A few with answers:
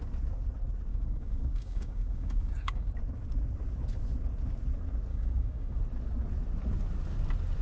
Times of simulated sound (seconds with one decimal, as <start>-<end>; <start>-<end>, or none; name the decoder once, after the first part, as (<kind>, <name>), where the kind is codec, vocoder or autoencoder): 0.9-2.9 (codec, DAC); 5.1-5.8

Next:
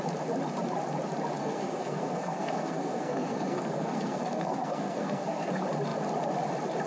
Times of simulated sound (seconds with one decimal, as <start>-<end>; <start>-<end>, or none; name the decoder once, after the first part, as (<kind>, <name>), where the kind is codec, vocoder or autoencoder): 1.4-5.5 (codec, SNAC)

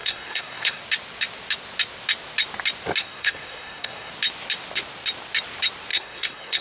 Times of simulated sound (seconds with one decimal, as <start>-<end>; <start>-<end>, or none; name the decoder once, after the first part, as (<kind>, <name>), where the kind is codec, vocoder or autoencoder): 0.0-0.8 (codec, SNAC); 3.0-4.1; 5.9-6.6

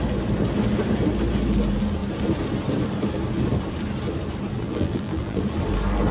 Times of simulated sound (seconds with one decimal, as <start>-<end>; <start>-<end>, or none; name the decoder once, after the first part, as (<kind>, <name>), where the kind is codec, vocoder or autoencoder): 4.6-5.4 (vocoder, BigVGAN v2)